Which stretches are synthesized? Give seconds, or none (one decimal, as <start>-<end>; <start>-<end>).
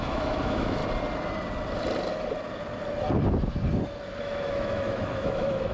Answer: 0.0-0.8; 4.2-5.7